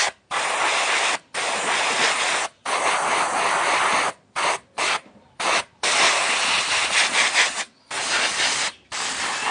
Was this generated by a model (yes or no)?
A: no